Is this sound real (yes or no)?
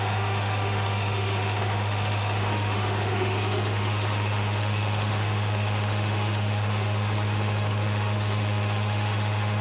no